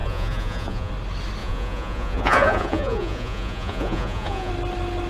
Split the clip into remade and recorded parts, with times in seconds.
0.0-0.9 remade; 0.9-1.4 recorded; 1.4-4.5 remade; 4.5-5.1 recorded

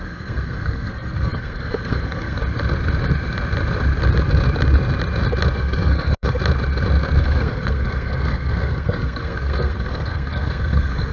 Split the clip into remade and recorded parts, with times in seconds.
0.0-2.4 remade; 2.4-5.5 recorded; 5.5-6.4 remade; 6.4-7.2 recorded; 7.2-11.1 remade

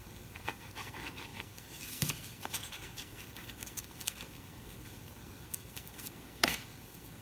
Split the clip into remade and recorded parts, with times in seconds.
0.0-7.2 remade

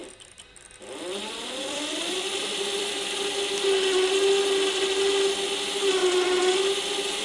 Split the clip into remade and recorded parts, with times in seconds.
0.0-3.5 remade; 3.5-7.2 recorded

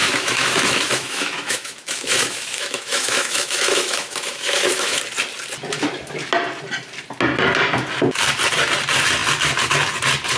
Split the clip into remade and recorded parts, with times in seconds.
0.0-5.0 remade; 5.0-10.4 recorded

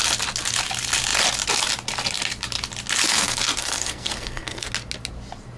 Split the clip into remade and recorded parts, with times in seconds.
0.0-3.1 recorded; 3.1-4.7 remade; 4.7-5.6 recorded

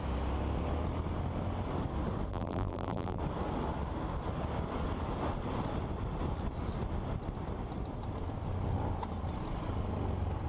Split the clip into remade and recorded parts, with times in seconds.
0.0-2.3 recorded; 2.3-3.2 remade; 3.2-10.5 recorded